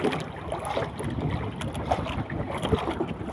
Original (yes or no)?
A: yes